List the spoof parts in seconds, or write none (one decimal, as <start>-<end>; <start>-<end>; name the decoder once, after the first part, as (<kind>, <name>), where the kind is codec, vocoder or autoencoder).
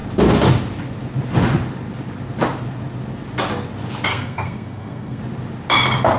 4.1-5.2 (codec, SNAC)